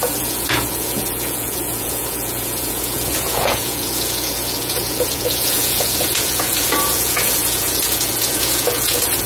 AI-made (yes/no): yes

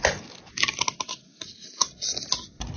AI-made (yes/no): no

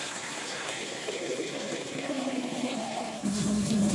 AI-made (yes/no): yes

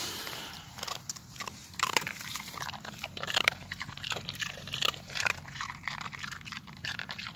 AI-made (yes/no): yes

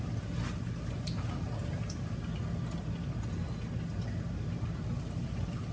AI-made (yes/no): no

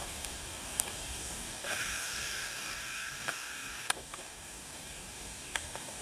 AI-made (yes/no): yes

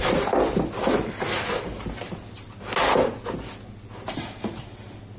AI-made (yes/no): no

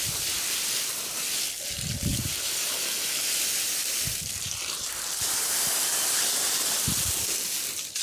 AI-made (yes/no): no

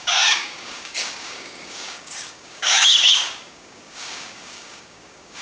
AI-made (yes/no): yes